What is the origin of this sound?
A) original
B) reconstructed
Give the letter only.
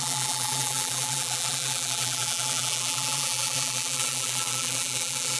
B